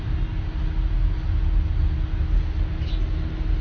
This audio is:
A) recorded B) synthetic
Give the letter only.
A